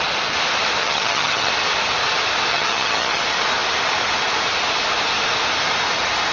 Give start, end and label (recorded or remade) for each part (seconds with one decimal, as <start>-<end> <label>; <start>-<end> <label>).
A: 0.0-0.8 recorded; 0.8-1.5 remade; 1.5-2.5 recorded; 2.5-3.2 remade; 3.2-6.3 recorded